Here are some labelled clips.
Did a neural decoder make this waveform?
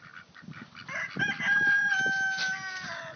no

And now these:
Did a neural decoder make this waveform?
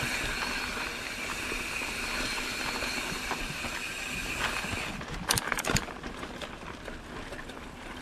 no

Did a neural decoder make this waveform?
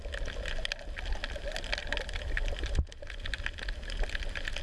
no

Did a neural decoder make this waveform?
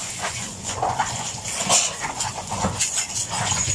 yes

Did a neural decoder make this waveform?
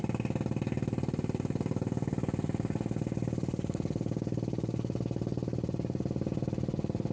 no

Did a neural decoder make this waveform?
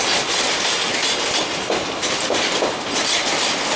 no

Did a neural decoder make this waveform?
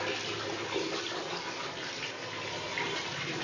no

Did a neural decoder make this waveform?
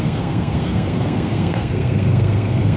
yes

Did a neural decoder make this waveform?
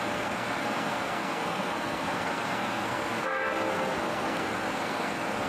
yes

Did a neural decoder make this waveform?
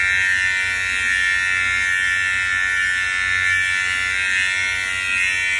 no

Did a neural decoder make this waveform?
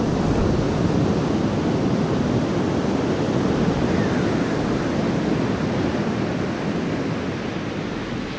no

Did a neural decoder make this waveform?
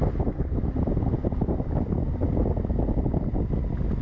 no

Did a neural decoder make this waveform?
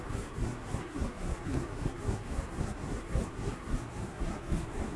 yes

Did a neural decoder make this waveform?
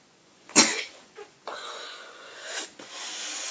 yes